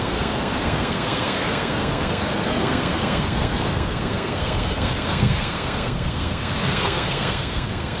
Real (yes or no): no